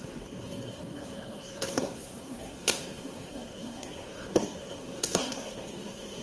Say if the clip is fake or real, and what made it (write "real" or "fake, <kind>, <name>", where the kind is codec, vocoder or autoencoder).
fake, codec, SNAC